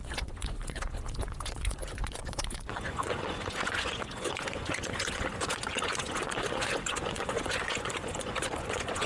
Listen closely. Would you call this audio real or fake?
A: fake